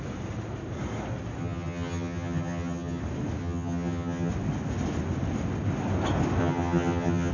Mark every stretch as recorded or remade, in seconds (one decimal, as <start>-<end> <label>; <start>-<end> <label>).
0.0-1.4 recorded; 1.4-3.0 remade; 3.0-3.4 recorded; 3.4-4.3 remade; 4.3-6.4 recorded; 6.4-7.3 remade